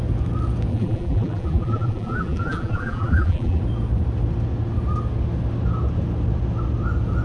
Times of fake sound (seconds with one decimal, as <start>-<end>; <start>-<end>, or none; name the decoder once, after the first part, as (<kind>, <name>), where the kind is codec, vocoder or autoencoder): 0.7-3.6 (vocoder, BigVGAN v2)